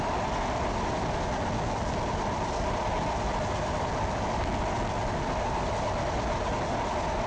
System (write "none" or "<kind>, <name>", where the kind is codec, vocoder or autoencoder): none